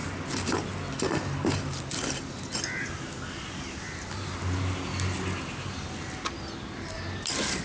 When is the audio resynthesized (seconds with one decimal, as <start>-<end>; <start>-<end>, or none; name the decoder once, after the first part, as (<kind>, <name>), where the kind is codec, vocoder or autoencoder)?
none